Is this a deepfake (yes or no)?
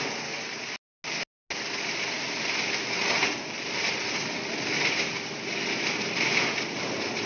no